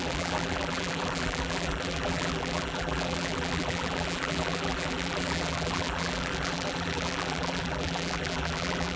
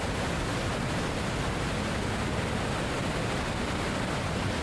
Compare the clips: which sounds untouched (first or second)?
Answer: second